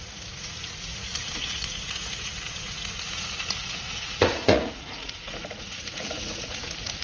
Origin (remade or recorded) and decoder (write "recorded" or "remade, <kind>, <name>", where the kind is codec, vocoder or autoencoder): remade, vocoder, Vocos